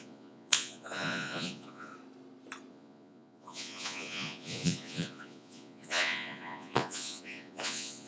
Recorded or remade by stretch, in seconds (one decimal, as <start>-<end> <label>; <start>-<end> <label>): 0.0-1.9 remade; 1.9-2.7 recorded; 2.7-8.1 remade